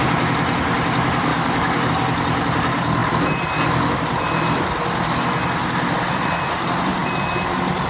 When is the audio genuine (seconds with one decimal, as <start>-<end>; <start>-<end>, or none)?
0.0-1.3; 1.9-7.9